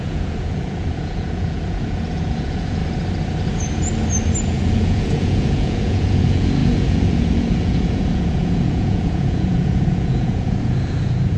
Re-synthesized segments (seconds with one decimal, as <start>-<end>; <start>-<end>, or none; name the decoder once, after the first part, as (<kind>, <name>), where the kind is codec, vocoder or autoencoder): 0.0-2.8 (vocoder, Vocos); 4.4-11.4